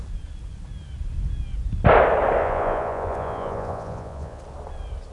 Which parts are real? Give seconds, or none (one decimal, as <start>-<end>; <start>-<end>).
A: 0.0-2.4; 4.4-5.1